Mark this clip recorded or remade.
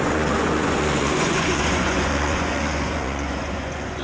remade